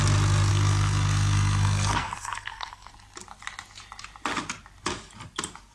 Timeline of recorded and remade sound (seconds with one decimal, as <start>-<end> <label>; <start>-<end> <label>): 0.0-0.5 recorded; 0.5-2.9 remade; 2.9-5.7 recorded